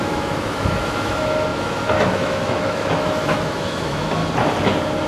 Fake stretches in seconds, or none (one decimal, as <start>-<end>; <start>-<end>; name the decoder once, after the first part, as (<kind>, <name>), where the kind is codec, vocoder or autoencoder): 0.0-4.2 (autoencoder, DAC-VAE)